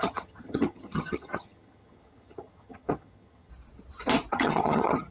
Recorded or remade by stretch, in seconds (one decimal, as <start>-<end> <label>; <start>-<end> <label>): 0.0-3.5 remade; 3.5-4.3 recorded; 4.3-5.1 remade